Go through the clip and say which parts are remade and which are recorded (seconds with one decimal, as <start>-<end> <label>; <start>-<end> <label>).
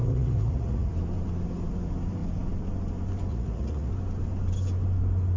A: 0.0-0.9 remade; 0.9-3.3 recorded; 3.3-3.9 remade; 3.9-5.4 recorded